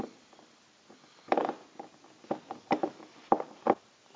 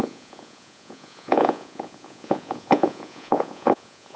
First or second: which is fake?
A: second